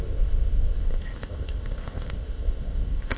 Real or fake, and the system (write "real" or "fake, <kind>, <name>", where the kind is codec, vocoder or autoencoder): fake, codec, ZipCodec